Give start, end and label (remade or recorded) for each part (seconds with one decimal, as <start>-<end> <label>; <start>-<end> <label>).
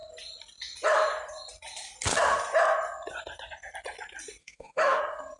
0.0-4.4 recorded; 4.4-5.0 remade; 5.0-5.4 recorded